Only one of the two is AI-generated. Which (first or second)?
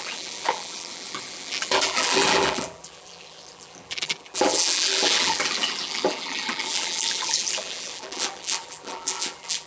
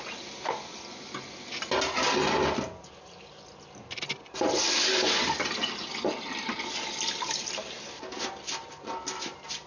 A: first